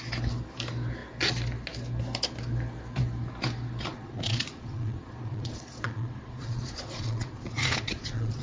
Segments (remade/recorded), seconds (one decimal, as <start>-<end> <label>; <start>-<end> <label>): 0.0-3.9 recorded; 3.9-8.4 remade